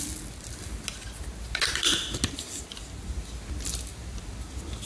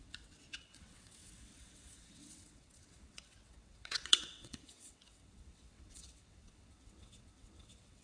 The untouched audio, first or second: first